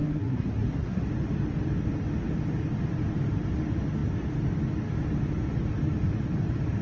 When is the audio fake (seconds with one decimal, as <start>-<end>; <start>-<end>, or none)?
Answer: 0.0-1.0